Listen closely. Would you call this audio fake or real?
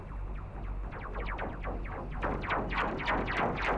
real